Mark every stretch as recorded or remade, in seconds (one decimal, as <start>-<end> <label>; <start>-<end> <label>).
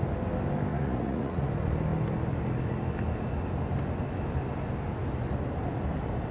0.0-0.7 recorded; 0.7-1.5 remade; 1.5-6.3 recorded